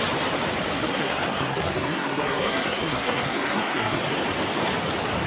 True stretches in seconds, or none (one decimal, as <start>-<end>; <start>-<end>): 0.0-0.8; 4.0-5.3